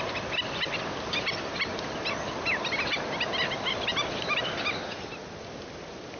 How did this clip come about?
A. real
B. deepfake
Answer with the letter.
A